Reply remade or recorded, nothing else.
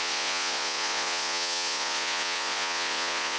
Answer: remade